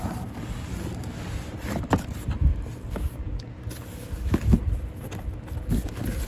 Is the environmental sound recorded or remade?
recorded